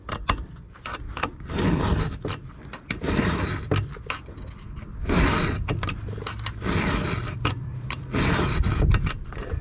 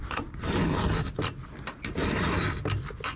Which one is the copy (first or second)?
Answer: first